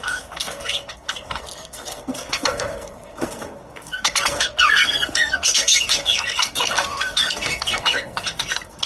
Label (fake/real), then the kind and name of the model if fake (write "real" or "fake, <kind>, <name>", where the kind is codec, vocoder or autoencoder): fake, codec, SNAC